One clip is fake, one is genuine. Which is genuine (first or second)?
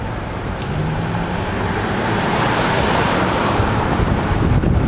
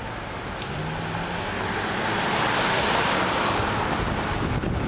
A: second